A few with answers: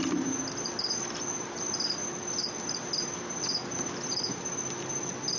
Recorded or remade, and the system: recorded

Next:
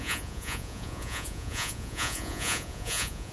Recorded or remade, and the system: remade, vocoder, Vocos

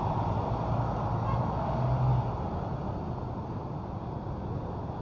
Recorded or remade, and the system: recorded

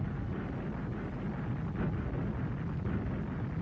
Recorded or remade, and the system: recorded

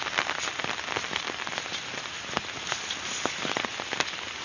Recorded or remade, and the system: recorded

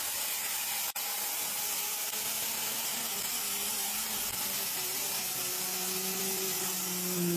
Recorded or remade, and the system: recorded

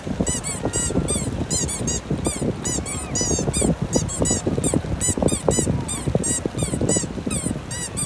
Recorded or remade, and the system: recorded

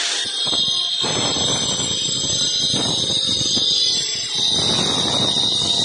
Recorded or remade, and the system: recorded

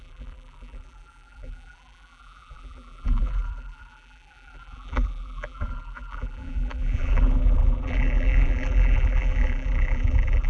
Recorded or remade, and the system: remade, vocoder, BigVGAN v2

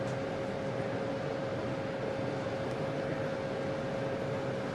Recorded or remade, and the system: recorded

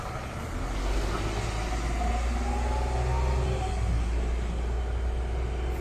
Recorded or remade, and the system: recorded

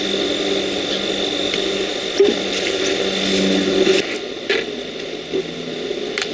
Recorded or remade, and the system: recorded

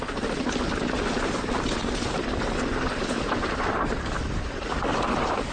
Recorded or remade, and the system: recorded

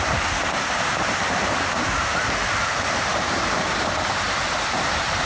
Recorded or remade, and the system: remade, vocoder, BigVGAN v2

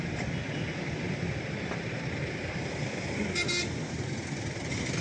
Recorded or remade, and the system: recorded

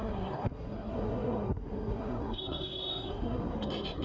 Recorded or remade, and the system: remade, codec, SNAC